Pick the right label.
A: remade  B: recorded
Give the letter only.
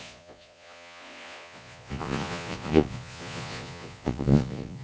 A